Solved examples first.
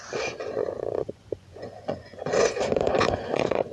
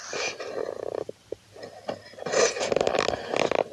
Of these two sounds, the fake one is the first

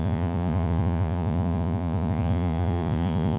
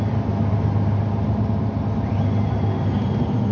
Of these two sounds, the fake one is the first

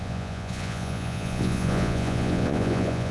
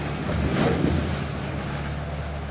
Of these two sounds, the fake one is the first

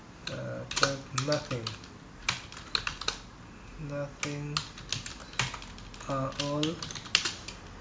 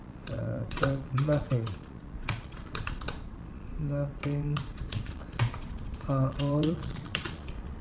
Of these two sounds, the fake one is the second